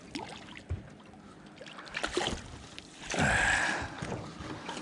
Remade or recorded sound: recorded